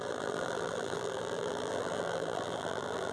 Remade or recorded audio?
remade